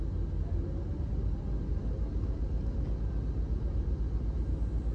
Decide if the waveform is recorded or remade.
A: recorded